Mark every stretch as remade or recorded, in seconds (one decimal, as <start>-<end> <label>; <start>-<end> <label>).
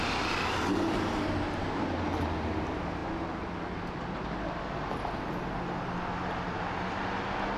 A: 0.0-7.6 recorded